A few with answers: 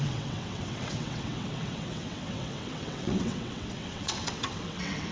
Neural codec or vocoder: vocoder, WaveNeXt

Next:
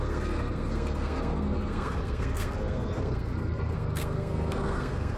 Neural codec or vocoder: codec, SNAC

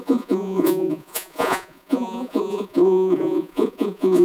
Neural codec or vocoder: vocoder, Vocos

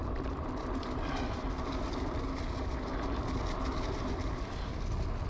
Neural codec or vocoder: none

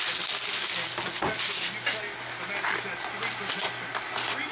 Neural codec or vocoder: none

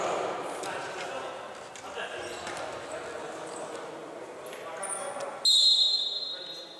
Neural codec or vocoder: none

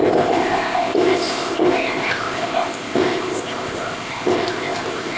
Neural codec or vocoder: codec, ZipCodec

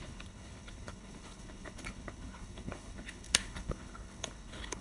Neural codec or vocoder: codec, HILCodec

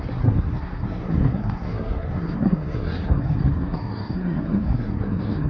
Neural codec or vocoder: codec, SNAC